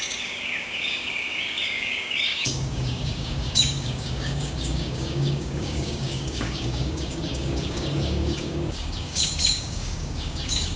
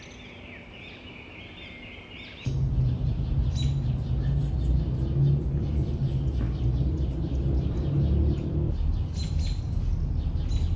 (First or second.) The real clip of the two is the second